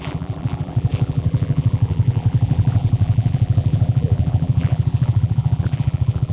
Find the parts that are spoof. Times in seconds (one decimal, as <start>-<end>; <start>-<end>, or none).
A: 0.0-6.3